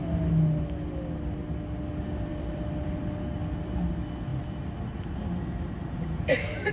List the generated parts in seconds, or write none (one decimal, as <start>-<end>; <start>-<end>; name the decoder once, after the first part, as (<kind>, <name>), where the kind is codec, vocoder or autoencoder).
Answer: 2.3-3.0 (vocoder, BigVGAN v2); 3.4-3.9